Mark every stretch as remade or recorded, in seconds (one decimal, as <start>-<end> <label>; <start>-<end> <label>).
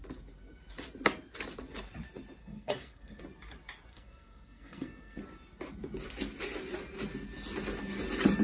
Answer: 0.0-2.4 recorded; 2.4-3.2 remade; 3.2-3.9 recorded; 3.9-5.2 remade; 5.2-8.4 recorded